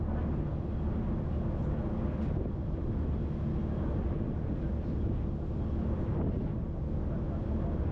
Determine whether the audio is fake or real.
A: real